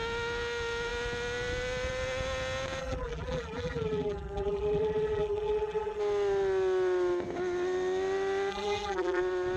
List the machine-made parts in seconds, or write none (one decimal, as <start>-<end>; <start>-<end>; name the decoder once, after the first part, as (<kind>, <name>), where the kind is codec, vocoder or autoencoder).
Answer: 2.8-6.0 (vocoder, BigVGAN v2); 8.5-9.2